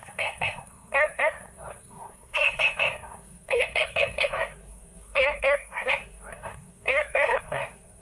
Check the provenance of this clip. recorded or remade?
remade